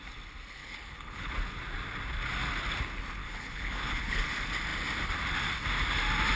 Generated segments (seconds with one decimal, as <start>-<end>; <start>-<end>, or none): 0.6-1.3; 3.2-4.2